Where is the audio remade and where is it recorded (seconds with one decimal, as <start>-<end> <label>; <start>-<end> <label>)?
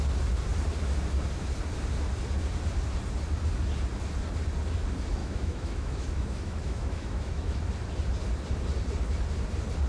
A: 0.0-5.2 recorded; 5.2-7.6 remade; 7.6-9.9 recorded